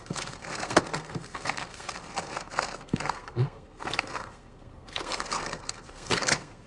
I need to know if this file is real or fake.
fake